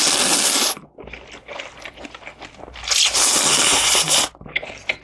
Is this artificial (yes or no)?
no